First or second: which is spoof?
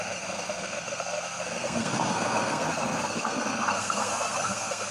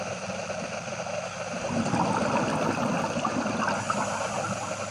first